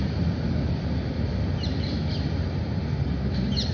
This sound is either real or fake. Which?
real